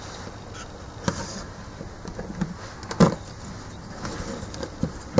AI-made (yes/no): no